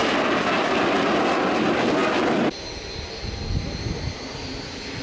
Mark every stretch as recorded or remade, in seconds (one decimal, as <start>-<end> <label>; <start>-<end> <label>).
0.0-5.0 recorded